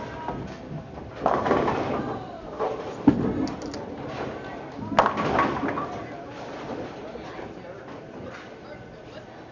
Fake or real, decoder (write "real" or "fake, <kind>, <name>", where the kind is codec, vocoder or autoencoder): real